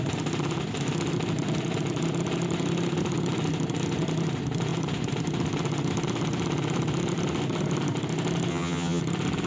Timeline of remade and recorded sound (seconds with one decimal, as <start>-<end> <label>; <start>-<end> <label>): 0.0-8.5 recorded; 8.5-9.0 remade; 9.0-9.5 recorded